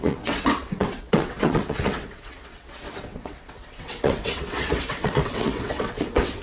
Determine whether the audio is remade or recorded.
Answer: remade